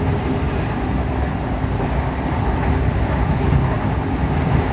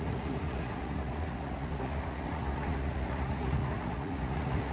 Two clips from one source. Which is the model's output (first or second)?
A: second